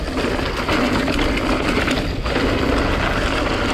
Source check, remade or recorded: recorded